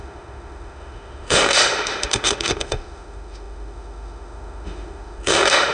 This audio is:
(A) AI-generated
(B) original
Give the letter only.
A